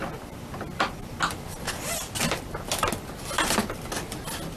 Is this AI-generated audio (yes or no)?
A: no